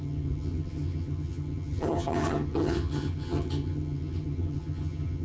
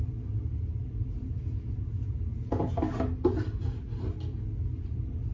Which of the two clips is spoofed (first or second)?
first